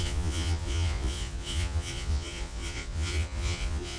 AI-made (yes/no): yes